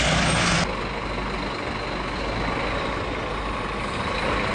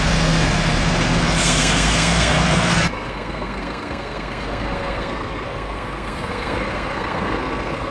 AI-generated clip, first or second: second